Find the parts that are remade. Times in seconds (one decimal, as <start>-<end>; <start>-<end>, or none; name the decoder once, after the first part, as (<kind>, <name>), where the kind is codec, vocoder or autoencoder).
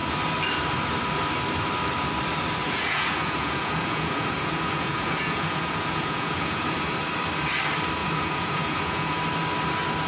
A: 2.6-6.9 (vocoder, Vocos); 8.0-9.2